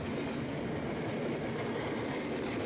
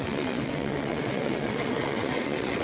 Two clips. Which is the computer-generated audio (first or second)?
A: second